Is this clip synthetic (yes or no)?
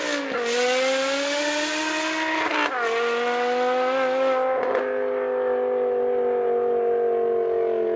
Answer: no